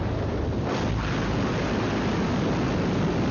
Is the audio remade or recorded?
recorded